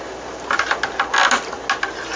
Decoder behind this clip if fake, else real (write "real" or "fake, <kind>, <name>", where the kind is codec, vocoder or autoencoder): real